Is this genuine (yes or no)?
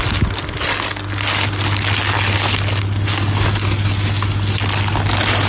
yes